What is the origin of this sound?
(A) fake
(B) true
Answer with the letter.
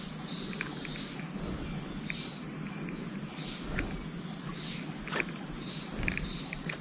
B